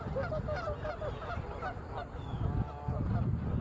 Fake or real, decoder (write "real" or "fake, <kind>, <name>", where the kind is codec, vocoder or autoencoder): real